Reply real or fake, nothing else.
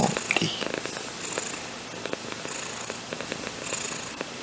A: real